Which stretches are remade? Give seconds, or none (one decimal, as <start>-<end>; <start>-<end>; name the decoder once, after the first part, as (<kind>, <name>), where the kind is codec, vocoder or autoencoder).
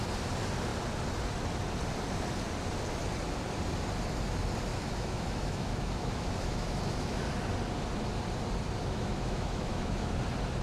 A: 4.7-7.2 (autoencoder, DAC-VAE); 8.8-10.1